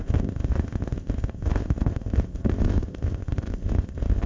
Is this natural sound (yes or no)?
no